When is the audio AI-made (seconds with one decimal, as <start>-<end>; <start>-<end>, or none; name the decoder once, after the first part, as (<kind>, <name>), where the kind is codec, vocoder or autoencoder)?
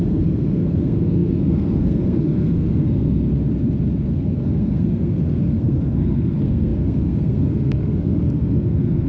0.0-3.3 (codec, SNAC); 4.1-9.1